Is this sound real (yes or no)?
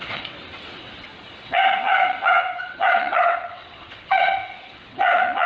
no